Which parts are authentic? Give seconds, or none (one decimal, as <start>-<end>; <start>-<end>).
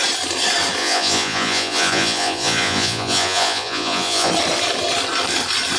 0.0-0.8; 4.3-5.8